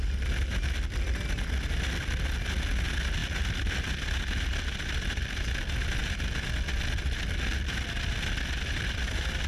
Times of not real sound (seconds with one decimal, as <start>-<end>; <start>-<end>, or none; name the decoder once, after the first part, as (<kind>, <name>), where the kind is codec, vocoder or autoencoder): none